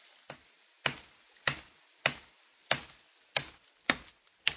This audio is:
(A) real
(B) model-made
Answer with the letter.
A